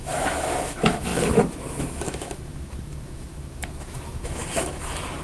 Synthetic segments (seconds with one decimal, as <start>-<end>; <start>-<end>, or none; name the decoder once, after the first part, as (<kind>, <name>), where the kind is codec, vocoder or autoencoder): 0.0-5.2 (autoencoder, DAC-VAE)